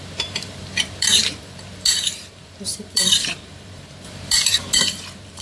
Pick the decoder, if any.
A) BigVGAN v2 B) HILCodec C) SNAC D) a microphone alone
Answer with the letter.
A